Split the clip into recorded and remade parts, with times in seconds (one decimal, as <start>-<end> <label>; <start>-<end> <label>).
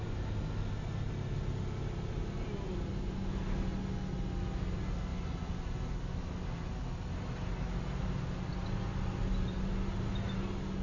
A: 0.0-10.8 recorded